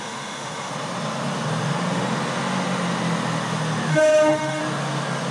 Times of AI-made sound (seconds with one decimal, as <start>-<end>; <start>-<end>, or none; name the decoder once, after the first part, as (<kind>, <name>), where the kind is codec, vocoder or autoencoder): 0.0-0.7 (autoencoder, DAC-VAE); 3.9-4.6